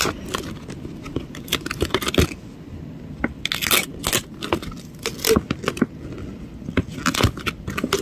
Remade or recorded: recorded